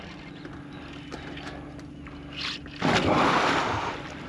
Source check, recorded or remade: recorded